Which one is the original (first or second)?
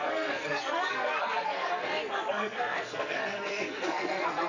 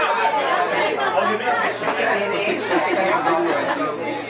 second